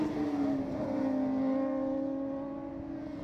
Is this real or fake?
real